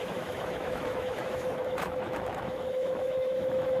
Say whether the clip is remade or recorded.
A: remade